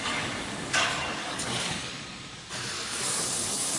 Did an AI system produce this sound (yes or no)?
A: yes